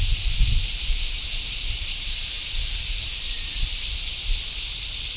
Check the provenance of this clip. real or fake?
fake